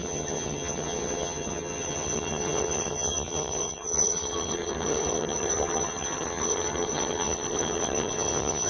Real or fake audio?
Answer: fake